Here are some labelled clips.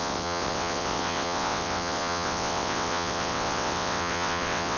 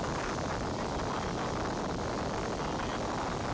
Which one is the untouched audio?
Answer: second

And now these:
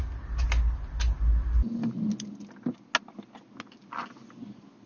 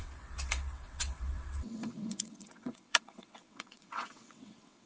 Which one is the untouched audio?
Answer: first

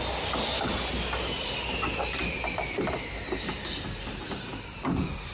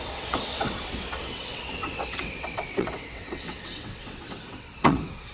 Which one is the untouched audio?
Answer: first